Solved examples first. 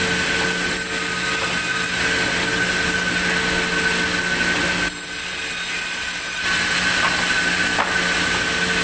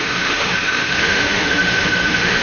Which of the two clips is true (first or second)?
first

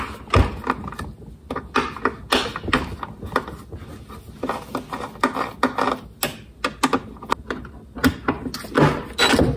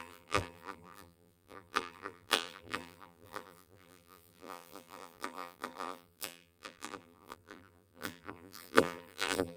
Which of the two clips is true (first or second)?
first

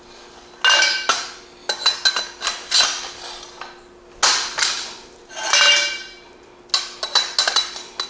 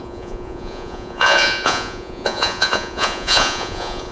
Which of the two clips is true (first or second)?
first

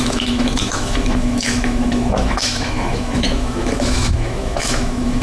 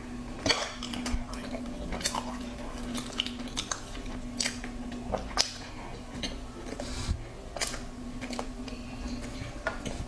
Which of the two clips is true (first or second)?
second